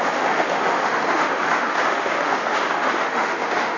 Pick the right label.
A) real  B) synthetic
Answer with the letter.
B